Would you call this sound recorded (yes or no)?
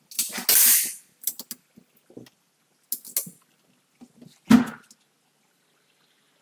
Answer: yes